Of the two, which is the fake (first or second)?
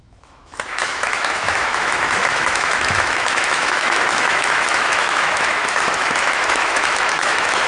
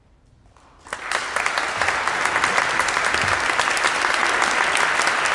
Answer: first